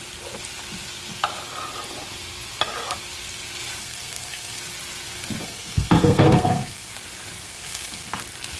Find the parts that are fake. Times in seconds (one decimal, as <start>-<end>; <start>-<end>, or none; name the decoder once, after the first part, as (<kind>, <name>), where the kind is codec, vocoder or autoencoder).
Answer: 3.8-4.6 (codec, SNAC); 5.4-6.9; 7.4-8.2